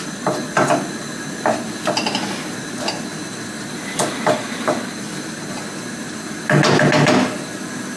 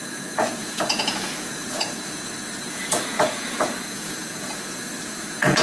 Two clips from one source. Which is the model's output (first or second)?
second